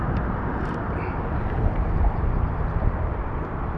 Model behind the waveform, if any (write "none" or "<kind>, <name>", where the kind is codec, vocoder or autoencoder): vocoder, BigVGAN v2